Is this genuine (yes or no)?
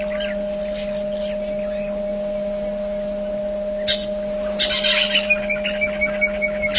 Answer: yes